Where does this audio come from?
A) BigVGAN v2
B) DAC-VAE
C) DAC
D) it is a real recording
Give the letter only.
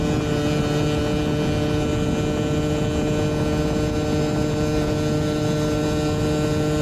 D